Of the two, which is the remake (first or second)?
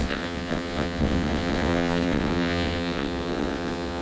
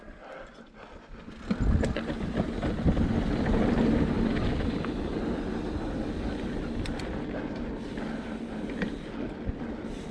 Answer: first